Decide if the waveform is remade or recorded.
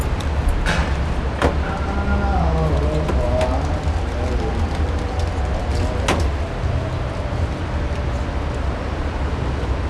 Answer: recorded